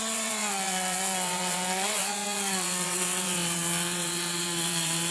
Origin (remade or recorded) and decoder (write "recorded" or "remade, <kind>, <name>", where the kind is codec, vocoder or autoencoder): remade, vocoder, WaveNeXt